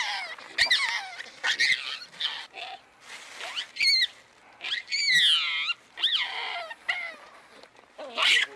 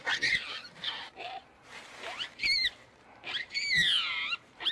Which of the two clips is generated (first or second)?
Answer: second